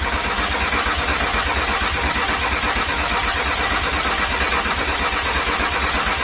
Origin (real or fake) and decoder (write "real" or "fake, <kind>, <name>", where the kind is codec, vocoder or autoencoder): real